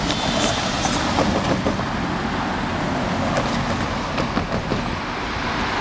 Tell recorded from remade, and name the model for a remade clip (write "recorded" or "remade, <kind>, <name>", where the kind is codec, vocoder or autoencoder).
recorded